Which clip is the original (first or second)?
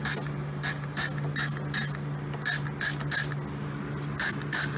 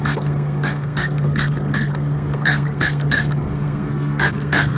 first